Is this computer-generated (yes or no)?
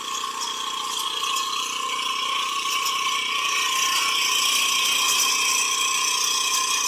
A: no